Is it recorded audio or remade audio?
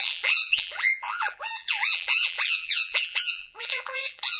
remade